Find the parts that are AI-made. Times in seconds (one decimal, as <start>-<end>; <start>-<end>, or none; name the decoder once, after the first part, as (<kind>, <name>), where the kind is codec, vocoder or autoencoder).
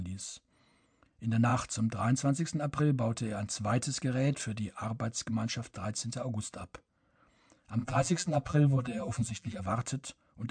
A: 7.8-9.6 (vocoder, BigVGAN v2)